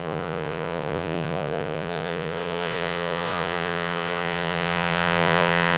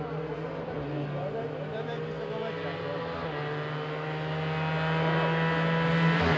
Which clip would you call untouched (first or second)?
second